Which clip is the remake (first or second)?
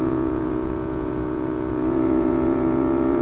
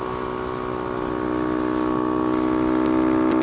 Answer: first